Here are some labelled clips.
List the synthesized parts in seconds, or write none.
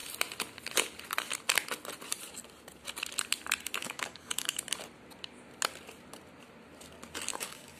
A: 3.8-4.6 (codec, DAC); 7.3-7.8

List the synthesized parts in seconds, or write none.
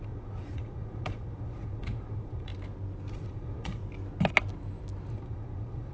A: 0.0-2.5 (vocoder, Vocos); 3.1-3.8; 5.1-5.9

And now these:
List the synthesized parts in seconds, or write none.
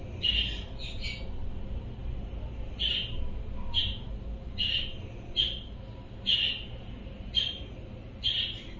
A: none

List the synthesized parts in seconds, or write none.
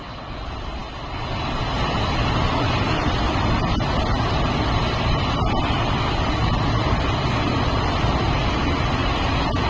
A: none